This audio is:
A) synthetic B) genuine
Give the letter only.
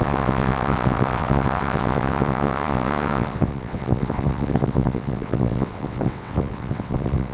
A